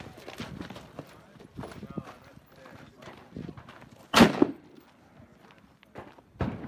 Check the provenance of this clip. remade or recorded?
recorded